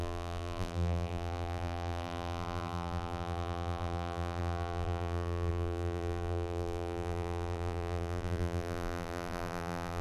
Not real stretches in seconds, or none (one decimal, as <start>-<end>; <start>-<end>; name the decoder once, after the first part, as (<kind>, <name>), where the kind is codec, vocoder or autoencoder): 0.0-10.0 (vocoder, BigVGAN v2)